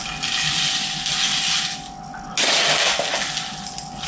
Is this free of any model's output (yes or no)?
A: yes